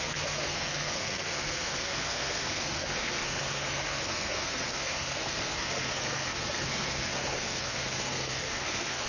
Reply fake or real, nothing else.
fake